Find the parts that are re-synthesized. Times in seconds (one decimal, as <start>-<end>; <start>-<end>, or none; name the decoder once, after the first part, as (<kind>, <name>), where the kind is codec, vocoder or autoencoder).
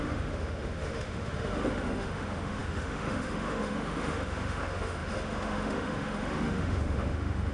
0.0-7.5 (autoencoder, DAC-VAE)